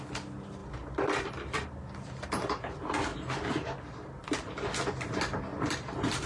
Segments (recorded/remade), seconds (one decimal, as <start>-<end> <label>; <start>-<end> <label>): 0.0-0.6 recorded; 0.6-2.7 remade; 2.7-4.2 recorded; 4.2-4.9 remade; 4.9-5.5 recorded; 5.5-6.3 remade